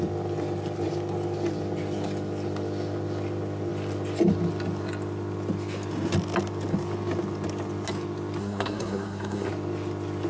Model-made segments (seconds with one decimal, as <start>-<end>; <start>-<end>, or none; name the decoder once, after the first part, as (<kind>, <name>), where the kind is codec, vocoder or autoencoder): 8.4-9.5 (codec, SNAC)